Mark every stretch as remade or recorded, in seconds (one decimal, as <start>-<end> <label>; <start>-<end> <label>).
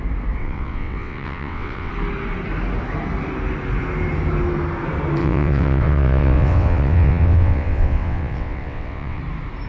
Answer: 0.0-0.4 recorded; 0.4-1.9 remade; 1.9-5.2 recorded; 5.2-9.2 remade; 9.2-9.7 recorded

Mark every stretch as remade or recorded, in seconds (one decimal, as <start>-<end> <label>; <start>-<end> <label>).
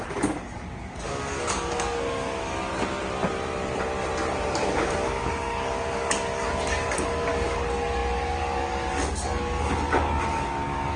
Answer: 0.0-2.7 remade; 2.7-4.6 recorded; 4.6-11.0 remade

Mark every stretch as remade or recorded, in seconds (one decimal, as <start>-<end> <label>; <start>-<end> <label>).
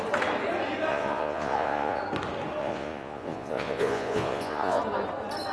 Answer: 0.0-0.9 recorded; 0.9-2.0 remade; 2.0-2.6 recorded; 2.6-4.8 remade; 4.8-5.5 recorded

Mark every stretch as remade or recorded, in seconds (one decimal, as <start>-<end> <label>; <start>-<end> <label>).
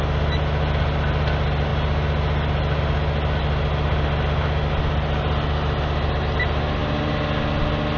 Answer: 0.0-8.0 recorded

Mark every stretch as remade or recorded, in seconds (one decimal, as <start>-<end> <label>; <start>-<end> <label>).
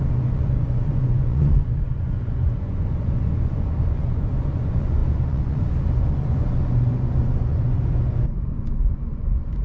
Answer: 0.0-9.6 remade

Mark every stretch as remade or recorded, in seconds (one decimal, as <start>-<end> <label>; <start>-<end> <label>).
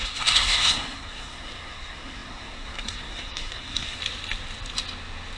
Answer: 0.0-4.0 remade; 4.0-5.4 recorded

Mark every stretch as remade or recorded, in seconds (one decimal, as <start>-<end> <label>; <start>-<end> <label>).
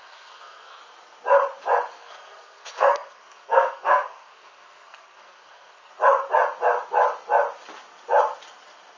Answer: 0.0-0.8 remade; 0.8-2.0 recorded; 2.0-5.9 remade; 5.9-9.0 recorded